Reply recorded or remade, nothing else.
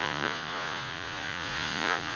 remade